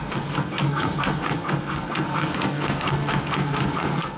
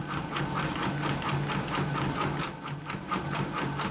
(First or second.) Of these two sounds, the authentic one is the second